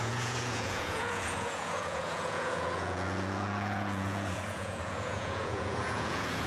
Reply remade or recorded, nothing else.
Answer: remade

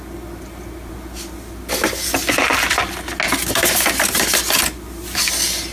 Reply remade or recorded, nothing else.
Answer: recorded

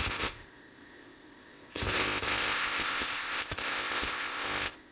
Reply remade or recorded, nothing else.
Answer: remade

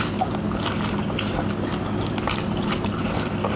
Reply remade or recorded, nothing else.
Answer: recorded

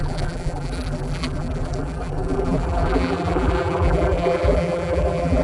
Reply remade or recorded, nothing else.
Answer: remade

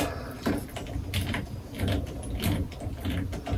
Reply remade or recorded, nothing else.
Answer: recorded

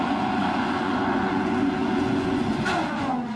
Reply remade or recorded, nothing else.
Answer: remade